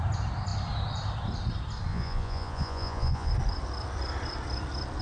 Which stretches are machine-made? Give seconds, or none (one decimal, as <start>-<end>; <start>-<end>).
1.9-3.3